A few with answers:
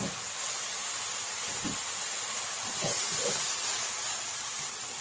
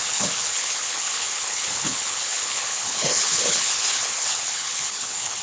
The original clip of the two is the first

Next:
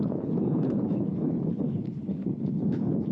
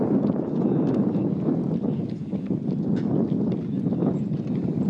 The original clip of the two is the second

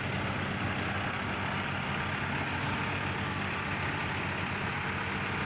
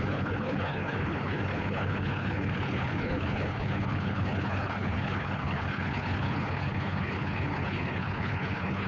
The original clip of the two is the first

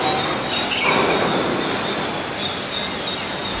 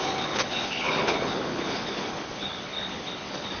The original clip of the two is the first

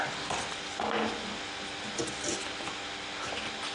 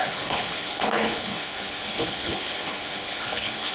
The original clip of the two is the first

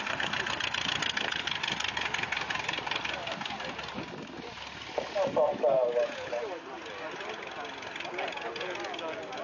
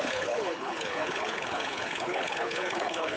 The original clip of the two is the first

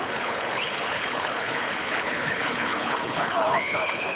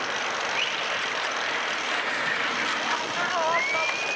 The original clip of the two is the second